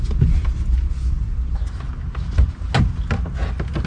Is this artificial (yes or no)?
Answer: no